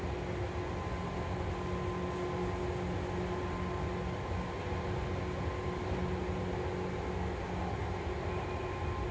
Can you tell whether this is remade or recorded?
recorded